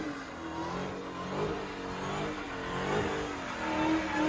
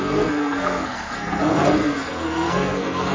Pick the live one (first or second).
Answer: first